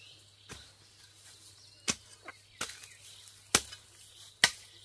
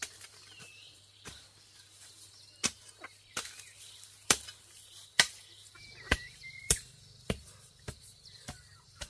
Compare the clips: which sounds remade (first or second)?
second